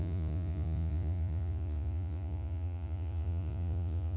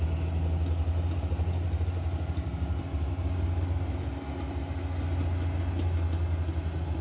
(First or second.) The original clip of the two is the second